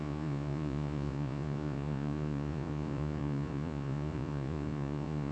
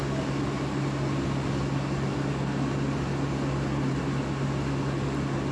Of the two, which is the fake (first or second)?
first